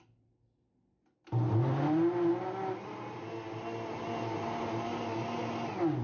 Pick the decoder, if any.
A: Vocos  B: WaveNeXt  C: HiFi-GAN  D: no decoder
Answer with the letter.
D